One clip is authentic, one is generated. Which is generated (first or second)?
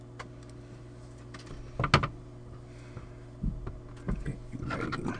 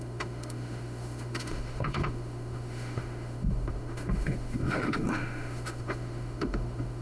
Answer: second